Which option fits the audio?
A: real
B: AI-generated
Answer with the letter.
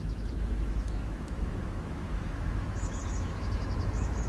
B